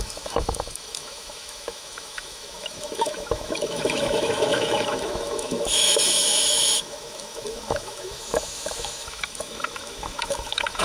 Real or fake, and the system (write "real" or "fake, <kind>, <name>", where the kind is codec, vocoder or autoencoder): fake, autoencoder, DAC-VAE